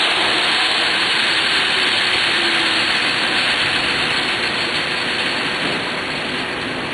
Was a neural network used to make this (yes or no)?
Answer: no